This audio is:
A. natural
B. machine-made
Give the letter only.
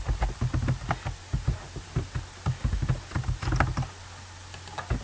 A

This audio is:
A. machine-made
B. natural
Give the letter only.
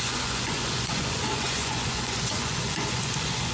A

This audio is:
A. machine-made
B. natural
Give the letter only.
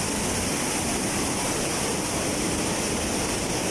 B